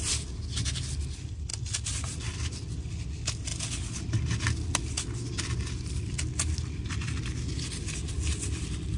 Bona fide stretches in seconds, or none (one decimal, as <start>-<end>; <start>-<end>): 0.0-9.0